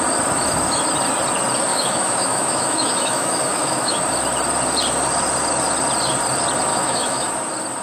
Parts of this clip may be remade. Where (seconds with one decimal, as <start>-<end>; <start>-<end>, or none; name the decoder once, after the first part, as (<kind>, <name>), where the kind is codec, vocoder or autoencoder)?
1.7-4.0 (autoencoder, DAC-VAE); 6.7-7.3